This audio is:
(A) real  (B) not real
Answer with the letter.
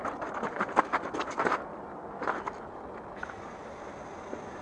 A